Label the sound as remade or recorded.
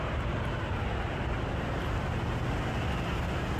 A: recorded